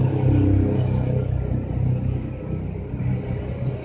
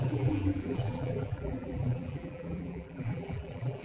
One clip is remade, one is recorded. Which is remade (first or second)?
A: second